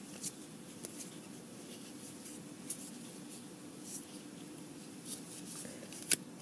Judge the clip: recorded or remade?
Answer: recorded